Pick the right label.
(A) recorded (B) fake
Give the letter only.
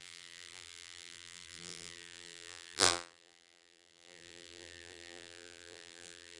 B